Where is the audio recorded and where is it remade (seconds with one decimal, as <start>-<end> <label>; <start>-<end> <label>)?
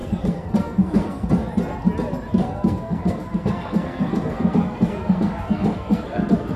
0.0-1.3 remade; 1.3-2.4 recorded; 2.4-6.6 remade